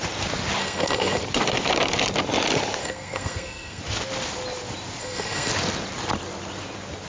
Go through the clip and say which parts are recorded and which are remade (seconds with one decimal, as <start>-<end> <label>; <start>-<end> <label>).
0.0-0.6 recorded; 0.6-1.2 remade; 1.2-2.8 recorded; 2.8-3.8 remade; 3.8-5.0 recorded; 5.0-5.5 remade; 5.5-7.1 recorded